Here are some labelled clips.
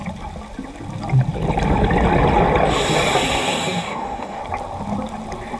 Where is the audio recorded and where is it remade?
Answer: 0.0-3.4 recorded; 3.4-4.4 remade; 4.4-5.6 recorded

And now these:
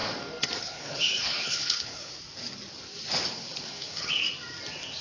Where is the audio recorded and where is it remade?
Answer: 0.0-0.6 recorded; 0.6-2.1 remade; 2.1-3.3 recorded; 3.3-4.2 remade; 4.2-5.0 recorded

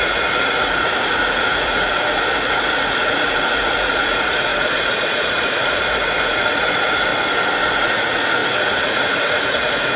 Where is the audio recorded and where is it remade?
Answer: 0.0-7.1 remade; 7.1-7.6 recorded; 7.6-10.0 remade

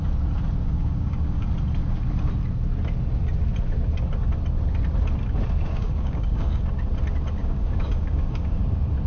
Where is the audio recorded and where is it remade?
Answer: 0.0-0.6 recorded; 0.6-1.5 remade; 1.5-5.7 recorded; 5.7-6.6 remade; 6.6-7.4 recorded; 7.4-8.6 remade; 8.6-9.1 recorded

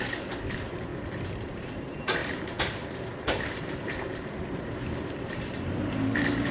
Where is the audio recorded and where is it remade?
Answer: 0.0-0.9 remade; 0.9-1.5 recorded; 1.5-6.5 remade

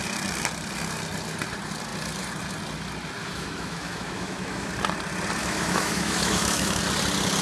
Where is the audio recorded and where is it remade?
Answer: 0.0-3.2 recorded; 3.2-4.7 remade; 4.7-5.4 recorded; 5.4-6.8 remade; 6.8-7.4 recorded

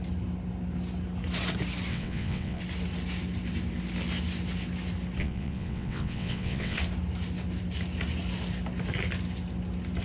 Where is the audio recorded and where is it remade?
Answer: 0.0-1.9 recorded; 1.9-2.6 remade; 2.6-5.2 recorded; 5.2-6.8 remade; 6.8-10.0 recorded

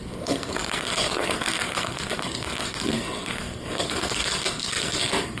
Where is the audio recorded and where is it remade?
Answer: 0.0-5.4 remade